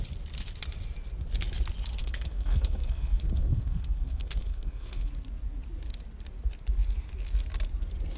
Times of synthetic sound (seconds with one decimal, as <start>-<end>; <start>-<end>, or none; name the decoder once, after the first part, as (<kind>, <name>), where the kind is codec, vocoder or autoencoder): 2.0-5.1 (codec, SNAC)